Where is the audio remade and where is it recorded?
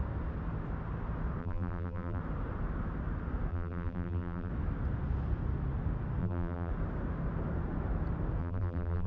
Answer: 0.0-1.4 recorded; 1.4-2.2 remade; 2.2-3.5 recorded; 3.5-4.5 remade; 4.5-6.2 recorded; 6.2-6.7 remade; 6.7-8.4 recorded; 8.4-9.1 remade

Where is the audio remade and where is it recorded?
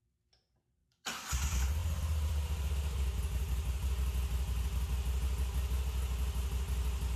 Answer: 0.0-0.8 recorded; 0.8-1.3 remade; 1.3-1.8 recorded; 1.8-2.7 remade; 2.7-7.2 recorded